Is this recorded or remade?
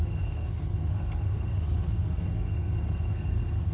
remade